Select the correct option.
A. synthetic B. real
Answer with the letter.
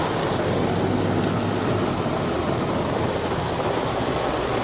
B